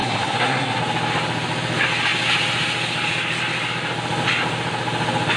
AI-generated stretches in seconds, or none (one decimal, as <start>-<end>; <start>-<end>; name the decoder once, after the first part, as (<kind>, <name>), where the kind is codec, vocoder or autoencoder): 0.0-0.8 (codec, SNAC)